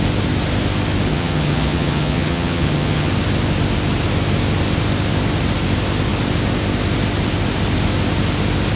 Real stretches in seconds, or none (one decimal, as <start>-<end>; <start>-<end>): 0.0-1.1; 3.1-8.8